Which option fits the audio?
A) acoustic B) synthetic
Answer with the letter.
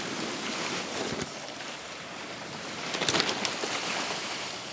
B